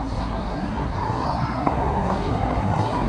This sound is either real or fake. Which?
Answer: fake